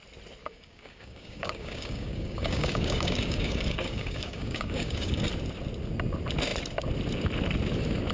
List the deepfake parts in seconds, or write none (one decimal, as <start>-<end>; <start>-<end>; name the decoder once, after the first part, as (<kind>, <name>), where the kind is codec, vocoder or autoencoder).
0.4-5.3 (codec, DAC)